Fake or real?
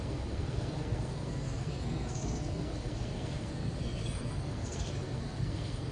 fake